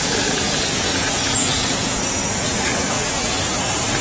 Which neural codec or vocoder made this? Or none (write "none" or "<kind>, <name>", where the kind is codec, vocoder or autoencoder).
vocoder, Vocos